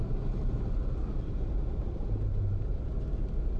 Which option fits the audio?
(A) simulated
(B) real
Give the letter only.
B